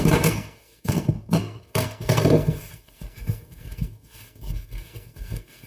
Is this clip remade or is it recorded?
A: remade